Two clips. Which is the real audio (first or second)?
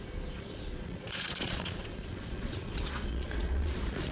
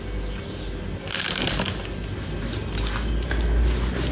second